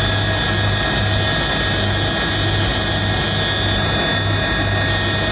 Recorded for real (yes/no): yes